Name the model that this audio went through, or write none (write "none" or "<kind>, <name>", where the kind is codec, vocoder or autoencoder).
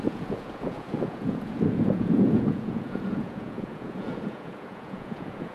vocoder, Vocos